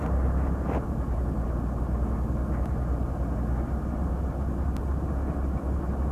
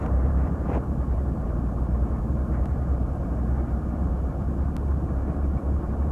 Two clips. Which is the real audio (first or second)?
first